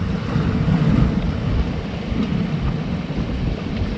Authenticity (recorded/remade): recorded